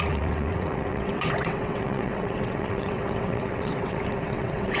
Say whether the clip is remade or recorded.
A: remade